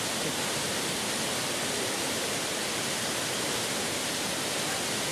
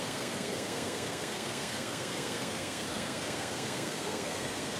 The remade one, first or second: second